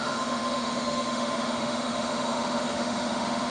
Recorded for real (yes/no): no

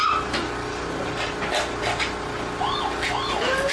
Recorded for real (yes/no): yes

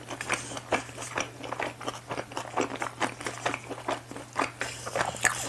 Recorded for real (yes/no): yes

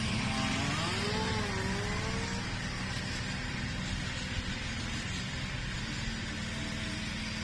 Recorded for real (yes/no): yes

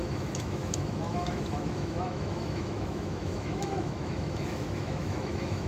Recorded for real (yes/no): no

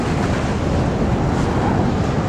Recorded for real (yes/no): yes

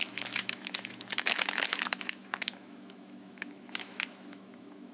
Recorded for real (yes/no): no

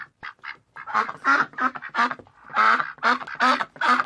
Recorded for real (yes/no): yes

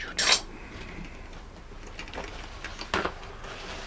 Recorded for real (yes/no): yes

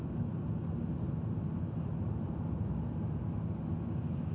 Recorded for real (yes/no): yes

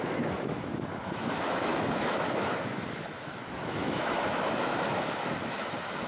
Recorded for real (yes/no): no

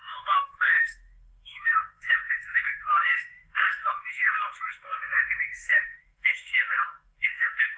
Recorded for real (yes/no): no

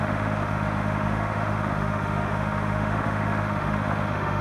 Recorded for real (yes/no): no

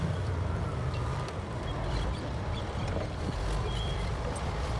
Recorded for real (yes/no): yes